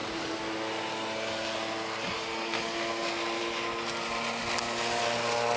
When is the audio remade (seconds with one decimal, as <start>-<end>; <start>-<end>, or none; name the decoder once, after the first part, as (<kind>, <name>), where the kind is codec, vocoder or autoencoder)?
none